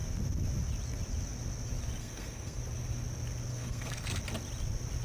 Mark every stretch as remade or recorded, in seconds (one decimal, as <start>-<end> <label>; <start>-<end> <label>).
0.0-2.0 recorded; 2.0-2.6 remade; 2.6-3.5 recorded; 3.5-4.2 remade; 4.2-5.0 recorded